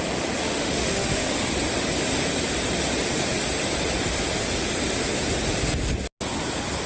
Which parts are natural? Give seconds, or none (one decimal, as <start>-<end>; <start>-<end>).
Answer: 0.0-0.4; 1.5-6.9